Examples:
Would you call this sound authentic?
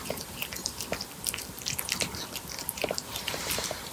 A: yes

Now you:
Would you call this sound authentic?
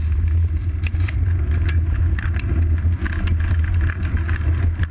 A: yes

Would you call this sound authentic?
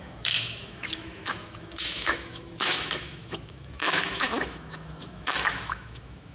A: no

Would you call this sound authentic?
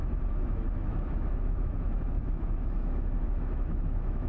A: no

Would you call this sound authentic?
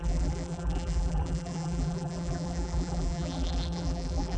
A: no